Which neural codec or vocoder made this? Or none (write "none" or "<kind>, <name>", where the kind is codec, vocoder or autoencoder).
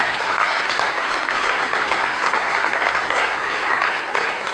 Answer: codec, SNAC